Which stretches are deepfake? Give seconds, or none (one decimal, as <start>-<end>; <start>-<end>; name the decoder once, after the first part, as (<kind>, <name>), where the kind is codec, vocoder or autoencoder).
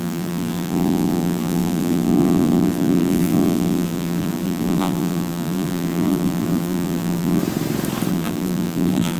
0.0-7.4 (vocoder, BigVGAN v2); 8.1-9.2